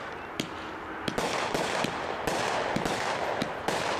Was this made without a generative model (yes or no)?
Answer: yes